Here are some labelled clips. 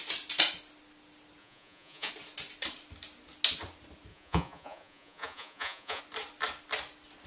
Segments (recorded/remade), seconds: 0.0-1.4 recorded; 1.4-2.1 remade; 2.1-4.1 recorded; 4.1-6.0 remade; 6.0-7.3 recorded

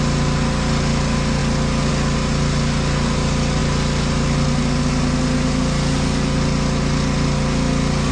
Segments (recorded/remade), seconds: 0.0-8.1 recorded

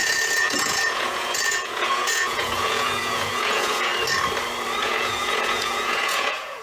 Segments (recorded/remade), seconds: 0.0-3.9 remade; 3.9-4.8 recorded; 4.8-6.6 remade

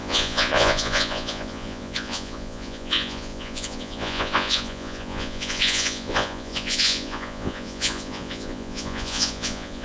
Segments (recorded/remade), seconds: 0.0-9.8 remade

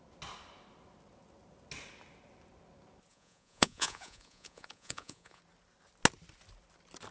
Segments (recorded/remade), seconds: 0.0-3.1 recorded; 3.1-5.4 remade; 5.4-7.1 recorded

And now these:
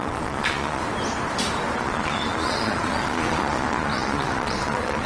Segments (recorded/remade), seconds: 0.0-0.8 remade; 0.8-1.8 recorded; 1.8-5.1 remade